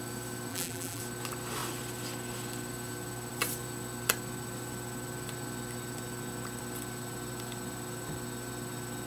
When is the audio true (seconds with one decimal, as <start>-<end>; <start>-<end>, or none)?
0.0-0.5; 1.0-9.1